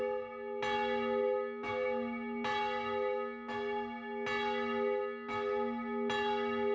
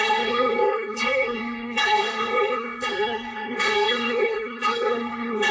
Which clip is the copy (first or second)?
second